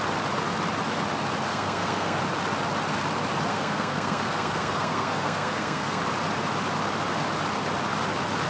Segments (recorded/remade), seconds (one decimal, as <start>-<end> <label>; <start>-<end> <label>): 0.0-1.5 recorded; 1.5-2.2 remade; 2.2-3.5 recorded; 3.5-6.0 remade; 6.0-8.5 recorded